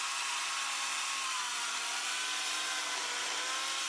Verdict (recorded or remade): recorded